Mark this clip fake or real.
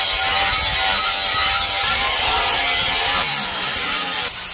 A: fake